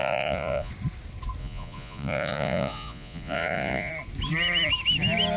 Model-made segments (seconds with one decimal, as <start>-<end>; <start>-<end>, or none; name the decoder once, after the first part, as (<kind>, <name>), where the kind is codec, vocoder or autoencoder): 0.0-0.7 (vocoder, Vocos); 1.4-3.9